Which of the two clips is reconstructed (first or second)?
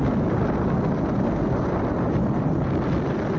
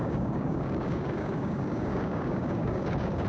second